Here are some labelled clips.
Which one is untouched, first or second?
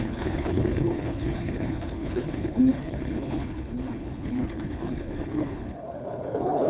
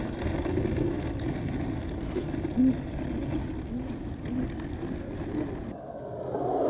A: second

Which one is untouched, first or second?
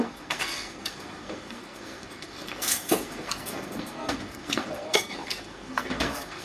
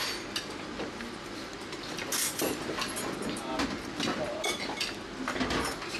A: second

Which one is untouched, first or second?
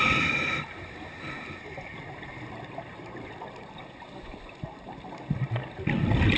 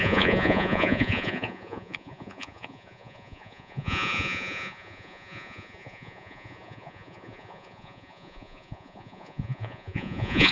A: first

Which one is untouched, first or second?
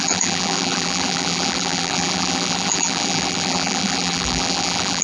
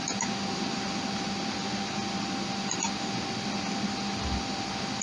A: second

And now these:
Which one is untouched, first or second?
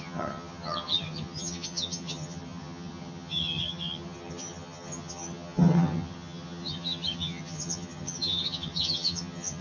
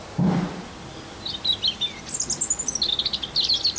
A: second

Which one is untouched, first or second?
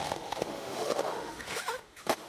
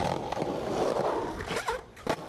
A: second